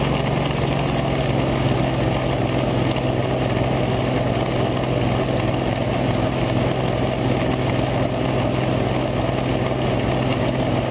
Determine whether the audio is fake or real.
real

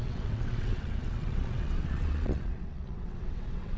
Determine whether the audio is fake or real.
fake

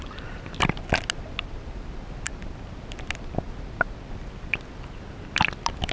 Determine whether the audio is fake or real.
real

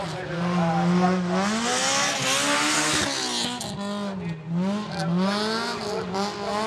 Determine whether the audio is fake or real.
real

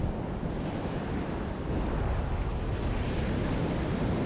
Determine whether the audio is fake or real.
real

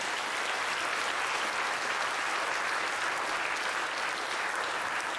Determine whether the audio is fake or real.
real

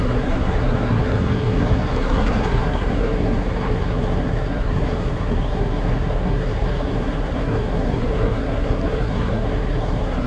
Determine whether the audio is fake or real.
fake